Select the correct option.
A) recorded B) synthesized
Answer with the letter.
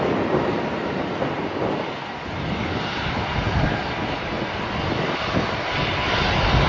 A